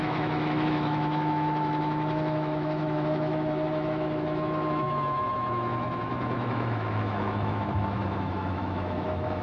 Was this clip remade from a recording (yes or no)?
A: yes